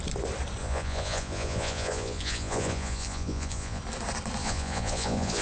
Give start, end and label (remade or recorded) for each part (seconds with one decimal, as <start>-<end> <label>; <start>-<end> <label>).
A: 0.0-0.6 recorded; 0.6-3.8 remade; 3.8-4.4 recorded; 4.4-5.4 remade